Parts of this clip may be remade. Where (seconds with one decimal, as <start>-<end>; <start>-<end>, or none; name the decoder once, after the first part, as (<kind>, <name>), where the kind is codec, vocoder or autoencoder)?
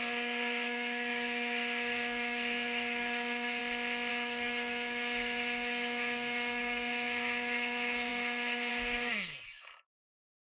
0.0-3.6 (codec, SNAC); 4.1-10.5